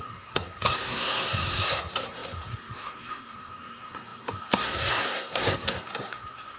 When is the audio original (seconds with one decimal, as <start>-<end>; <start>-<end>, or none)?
none